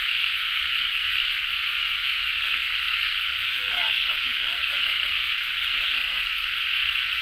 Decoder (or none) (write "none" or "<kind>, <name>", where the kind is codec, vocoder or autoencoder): codec, SNAC